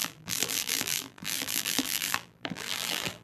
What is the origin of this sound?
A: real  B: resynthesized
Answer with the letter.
B